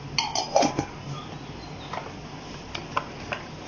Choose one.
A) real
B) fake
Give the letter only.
A